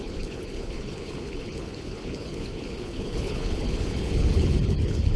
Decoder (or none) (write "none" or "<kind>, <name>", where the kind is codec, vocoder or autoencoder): codec, HILCodec